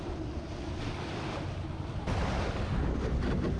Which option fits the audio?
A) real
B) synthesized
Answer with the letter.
A